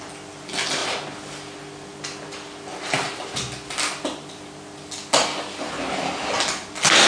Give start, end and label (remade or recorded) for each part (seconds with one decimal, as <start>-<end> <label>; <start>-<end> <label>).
0.0-7.1 recorded